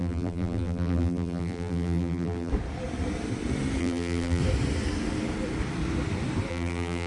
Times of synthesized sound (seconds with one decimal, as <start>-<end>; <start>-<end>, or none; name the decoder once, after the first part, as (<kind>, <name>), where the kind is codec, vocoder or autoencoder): 0.0-2.5 (vocoder, BigVGAN v2); 3.8-4.4; 6.5-7.1

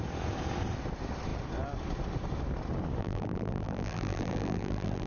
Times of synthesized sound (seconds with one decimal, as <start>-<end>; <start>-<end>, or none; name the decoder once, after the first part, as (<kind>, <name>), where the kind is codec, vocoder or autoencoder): 3.0-5.1 (vocoder, BigVGAN v2)

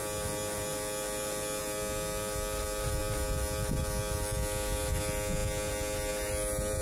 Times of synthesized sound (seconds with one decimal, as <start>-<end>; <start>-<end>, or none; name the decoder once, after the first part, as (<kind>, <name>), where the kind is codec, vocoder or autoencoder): none